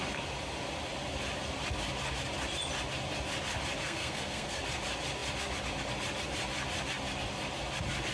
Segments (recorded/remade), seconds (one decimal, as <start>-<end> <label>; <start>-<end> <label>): 0.0-3.8 recorded; 3.8-4.6 remade; 4.6-8.1 recorded